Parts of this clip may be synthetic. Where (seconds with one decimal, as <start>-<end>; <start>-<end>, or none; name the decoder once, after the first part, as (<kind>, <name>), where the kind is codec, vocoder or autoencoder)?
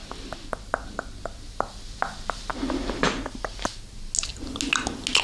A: none